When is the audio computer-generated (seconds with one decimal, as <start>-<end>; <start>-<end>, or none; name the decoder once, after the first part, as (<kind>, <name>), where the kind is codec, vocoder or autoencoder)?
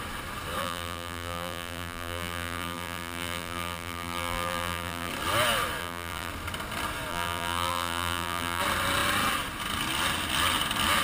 0.6-5.1 (vocoder, BigVGAN v2); 5.8-6.3; 7.1-8.6